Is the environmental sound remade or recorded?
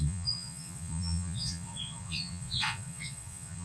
remade